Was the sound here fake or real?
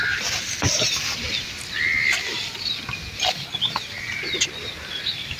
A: real